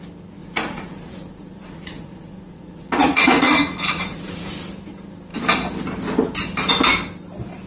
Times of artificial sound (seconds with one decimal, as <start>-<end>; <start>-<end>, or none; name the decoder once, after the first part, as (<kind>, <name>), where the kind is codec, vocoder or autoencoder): 0.4-4.5 (vocoder, Vocos)